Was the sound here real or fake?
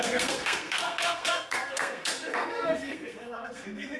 fake